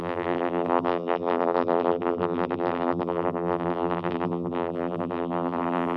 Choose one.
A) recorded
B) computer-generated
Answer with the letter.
B